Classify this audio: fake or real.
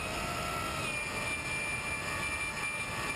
real